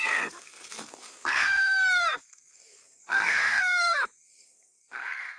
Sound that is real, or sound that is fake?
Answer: fake